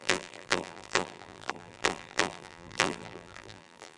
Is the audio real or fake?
fake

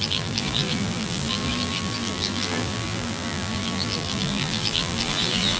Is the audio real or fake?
fake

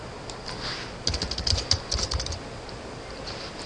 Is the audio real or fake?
real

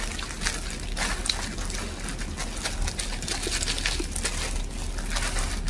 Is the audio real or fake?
real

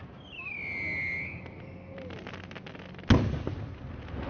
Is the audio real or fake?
real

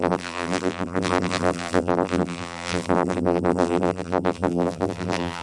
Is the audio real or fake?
fake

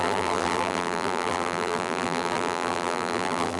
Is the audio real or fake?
fake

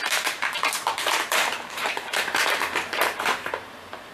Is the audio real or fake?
fake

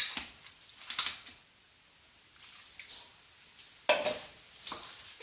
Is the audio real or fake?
real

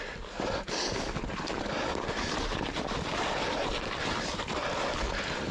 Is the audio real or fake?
real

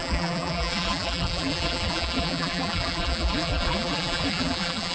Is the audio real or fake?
fake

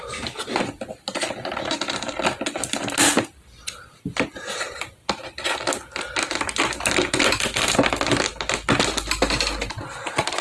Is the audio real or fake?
real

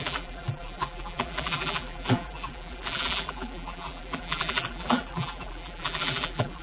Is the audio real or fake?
fake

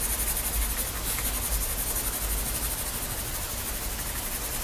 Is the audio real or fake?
real